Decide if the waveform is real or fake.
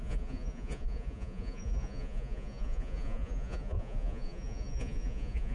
fake